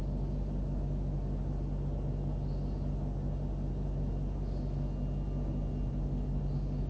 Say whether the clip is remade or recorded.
recorded